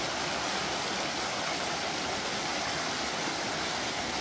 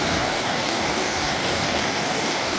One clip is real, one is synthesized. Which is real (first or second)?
first